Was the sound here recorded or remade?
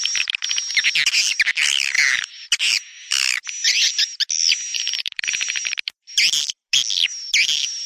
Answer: recorded